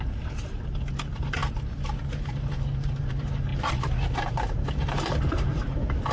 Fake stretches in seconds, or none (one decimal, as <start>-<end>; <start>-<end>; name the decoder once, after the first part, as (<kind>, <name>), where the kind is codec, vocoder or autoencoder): 0.0-1.4 (vocoder, BigVGAN v2); 2.1-6.1